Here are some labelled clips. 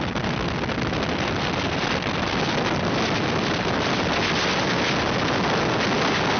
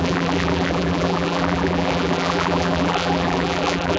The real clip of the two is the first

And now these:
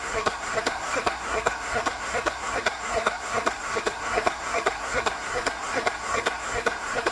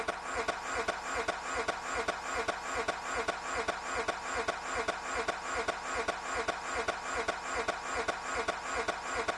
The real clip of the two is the second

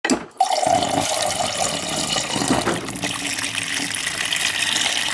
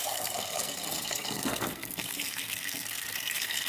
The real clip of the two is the first